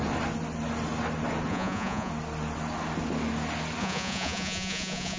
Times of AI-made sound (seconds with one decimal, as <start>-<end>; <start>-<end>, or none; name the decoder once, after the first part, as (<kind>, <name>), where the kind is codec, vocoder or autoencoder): 1.5-2.1 (vocoder, Vocos); 3.8-5.2

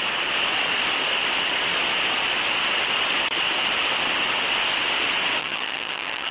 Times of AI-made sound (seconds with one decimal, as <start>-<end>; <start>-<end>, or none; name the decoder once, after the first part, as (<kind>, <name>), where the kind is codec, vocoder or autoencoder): 5.4-6.3 (vocoder, HiFi-GAN)

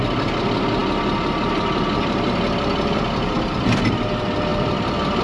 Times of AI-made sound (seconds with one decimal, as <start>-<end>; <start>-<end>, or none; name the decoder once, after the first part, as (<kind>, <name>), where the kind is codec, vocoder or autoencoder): 0.8-3.9 (vocoder, BigVGAN v2); 4.5-5.2

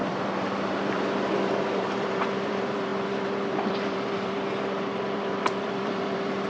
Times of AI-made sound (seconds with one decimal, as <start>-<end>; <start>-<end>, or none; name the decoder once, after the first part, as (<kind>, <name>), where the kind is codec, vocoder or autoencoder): 0.0-6.5 (vocoder, BigVGAN v2)

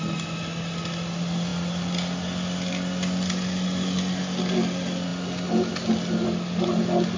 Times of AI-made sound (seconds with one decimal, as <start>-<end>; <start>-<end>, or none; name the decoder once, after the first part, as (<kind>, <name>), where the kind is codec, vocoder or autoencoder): none

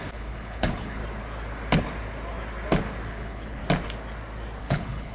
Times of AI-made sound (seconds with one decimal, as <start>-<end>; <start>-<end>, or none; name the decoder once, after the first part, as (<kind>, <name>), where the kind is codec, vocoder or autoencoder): 0.0-1.0 (codec, HILCodec); 3.1-3.6; 4.6-5.1